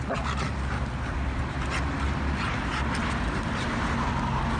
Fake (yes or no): no